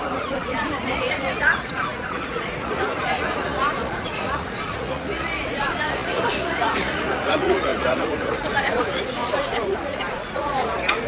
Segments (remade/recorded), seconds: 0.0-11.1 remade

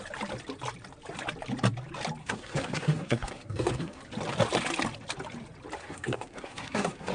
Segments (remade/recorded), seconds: 0.0-2.2 recorded; 2.2-4.0 remade; 4.0-5.8 recorded; 5.8-7.1 remade

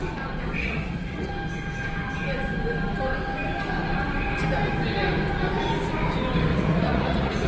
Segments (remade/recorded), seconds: 0.0-0.6 recorded; 0.6-1.3 remade; 1.3-6.5 recorded; 6.5-7.5 remade

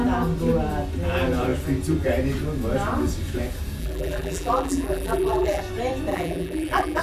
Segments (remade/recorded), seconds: 0.0-3.8 recorded; 3.8-5.6 remade; 5.6-6.1 recorded; 6.1-7.0 remade

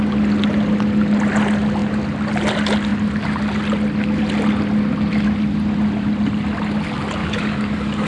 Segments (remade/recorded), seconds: 0.0-7.2 recorded; 7.2-8.1 remade

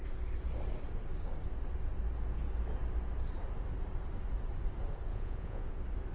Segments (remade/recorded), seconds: 0.0-5.1 recorded; 5.1-5.6 remade; 5.6-6.1 recorded

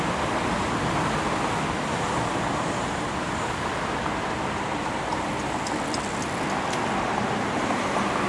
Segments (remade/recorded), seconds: 0.0-8.3 recorded